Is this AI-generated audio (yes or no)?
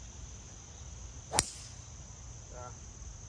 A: no